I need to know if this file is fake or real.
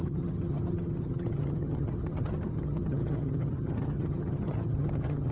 fake